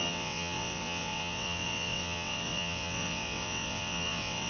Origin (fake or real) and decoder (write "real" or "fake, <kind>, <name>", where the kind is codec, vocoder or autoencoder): fake, vocoder, WaveNeXt